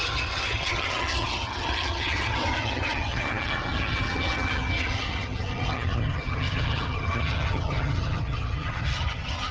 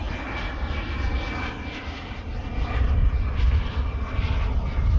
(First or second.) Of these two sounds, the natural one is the second